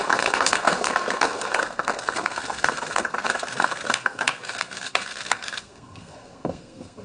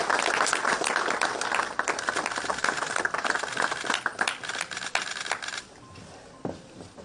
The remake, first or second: first